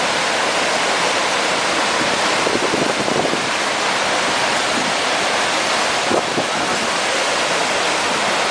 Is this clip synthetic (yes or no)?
no